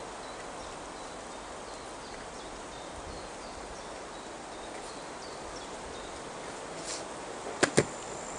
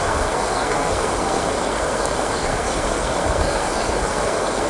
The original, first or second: first